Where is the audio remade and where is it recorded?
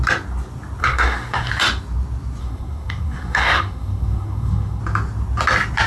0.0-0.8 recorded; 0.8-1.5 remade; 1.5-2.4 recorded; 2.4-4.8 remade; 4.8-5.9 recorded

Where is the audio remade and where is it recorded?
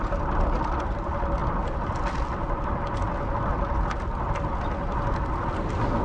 0.0-6.0 recorded